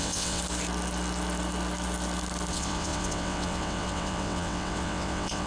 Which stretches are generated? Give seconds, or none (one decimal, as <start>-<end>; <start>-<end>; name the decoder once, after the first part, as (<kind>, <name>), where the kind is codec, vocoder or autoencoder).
0.0-0.4 (vocoder, WaveNeXt); 2.5-5.5